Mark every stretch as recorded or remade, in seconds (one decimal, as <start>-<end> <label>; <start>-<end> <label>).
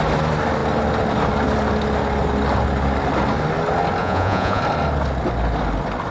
0.0-4.0 recorded; 4.0-4.6 remade; 4.6-6.1 recorded